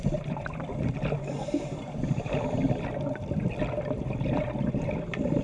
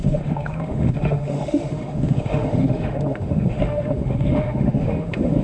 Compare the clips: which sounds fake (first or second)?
second